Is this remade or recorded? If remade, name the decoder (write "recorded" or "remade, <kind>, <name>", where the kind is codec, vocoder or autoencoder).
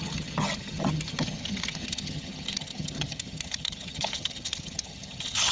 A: remade, vocoder, HiFi-GAN